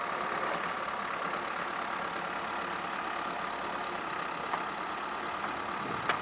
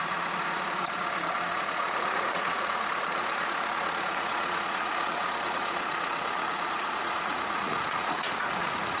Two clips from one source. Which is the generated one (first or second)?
second